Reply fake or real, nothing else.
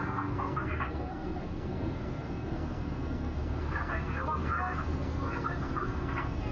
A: fake